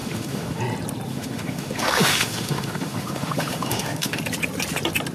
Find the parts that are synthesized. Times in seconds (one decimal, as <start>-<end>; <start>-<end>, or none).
0.0-0.6; 1.1-4.2